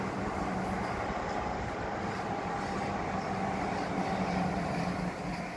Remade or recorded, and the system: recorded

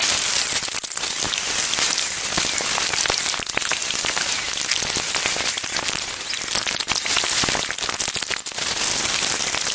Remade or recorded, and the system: recorded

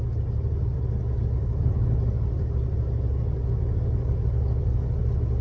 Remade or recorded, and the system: recorded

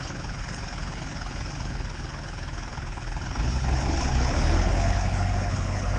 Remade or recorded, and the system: remade, codec, HILCodec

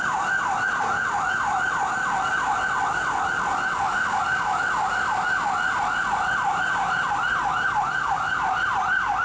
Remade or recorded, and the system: recorded